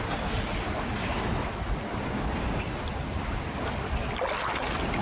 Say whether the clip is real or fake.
real